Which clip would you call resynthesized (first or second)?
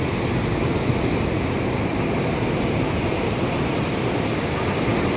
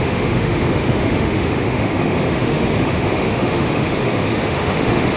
second